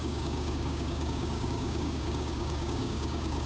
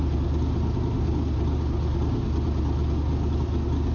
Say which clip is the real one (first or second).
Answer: second